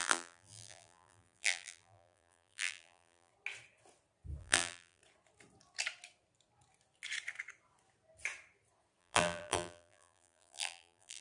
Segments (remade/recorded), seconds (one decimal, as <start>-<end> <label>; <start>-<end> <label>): 0.0-3.3 remade; 3.3-4.4 recorded; 4.4-5.0 remade; 5.0-9.0 recorded; 9.0-11.2 remade